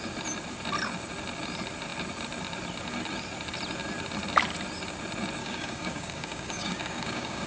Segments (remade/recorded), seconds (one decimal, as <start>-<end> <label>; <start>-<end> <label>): 0.0-5.4 recorded; 5.4-7.5 remade